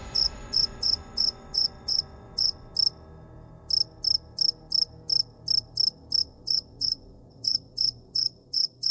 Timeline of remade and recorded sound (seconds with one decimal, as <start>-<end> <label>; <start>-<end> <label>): 0.0-2.7 remade; 2.7-6.2 recorded; 6.2-8.9 remade